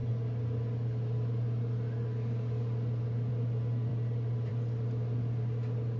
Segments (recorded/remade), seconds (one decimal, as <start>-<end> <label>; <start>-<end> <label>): 0.0-6.0 recorded